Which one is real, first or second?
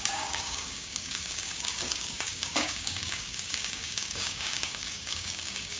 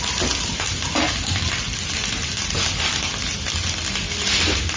second